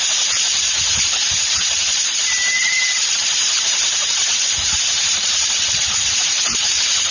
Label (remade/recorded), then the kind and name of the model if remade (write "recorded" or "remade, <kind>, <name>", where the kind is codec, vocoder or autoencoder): remade, vocoder, BigVGAN v2